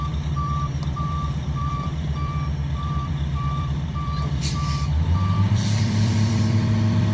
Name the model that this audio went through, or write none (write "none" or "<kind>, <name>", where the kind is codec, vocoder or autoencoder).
vocoder, BigVGAN v2